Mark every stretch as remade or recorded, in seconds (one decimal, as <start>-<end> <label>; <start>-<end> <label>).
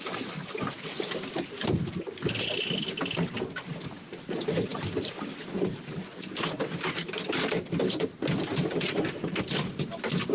0.0-10.3 recorded